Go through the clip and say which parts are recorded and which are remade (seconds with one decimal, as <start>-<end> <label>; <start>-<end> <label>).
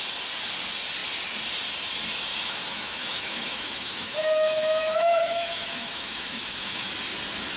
0.0-2.3 recorded; 2.3-6.9 remade; 6.9-7.6 recorded